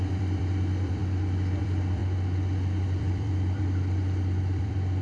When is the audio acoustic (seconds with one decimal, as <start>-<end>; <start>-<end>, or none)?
1.0-1.6; 2.0-3.0